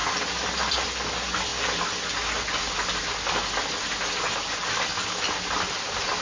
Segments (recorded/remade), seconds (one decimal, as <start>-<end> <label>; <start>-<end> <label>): 0.0-6.2 recorded